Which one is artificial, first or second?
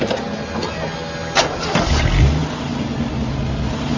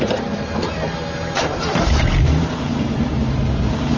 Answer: second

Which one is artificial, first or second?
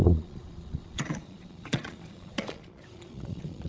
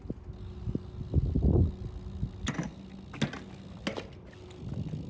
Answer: first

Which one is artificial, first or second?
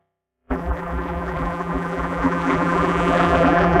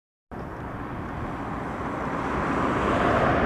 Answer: first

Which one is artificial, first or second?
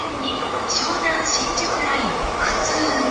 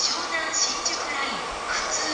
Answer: first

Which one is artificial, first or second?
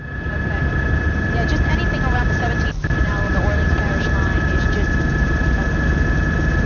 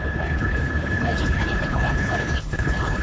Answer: second